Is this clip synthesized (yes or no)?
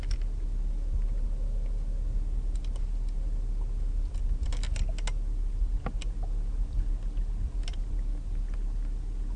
no